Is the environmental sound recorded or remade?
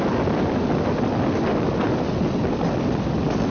recorded